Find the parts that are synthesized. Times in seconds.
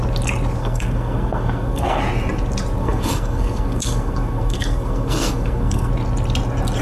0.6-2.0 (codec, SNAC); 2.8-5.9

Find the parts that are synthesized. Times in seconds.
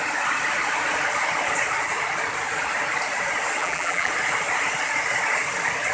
3.6-4.1 (vocoder, BigVGAN v2)